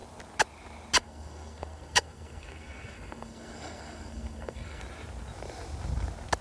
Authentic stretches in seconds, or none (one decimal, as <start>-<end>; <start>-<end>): 0.0-1.0; 4.8-6.4